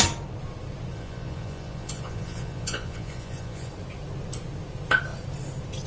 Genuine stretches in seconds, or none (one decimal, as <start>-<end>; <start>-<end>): 0.0-0.9; 3.7-5.9